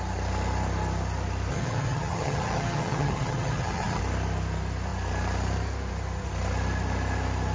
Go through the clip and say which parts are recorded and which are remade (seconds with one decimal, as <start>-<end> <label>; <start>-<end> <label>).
0.0-1.5 recorded; 1.5-4.0 remade; 4.0-7.5 recorded